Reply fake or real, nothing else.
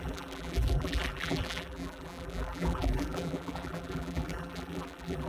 fake